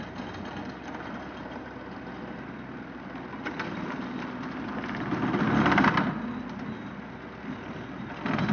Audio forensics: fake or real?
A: real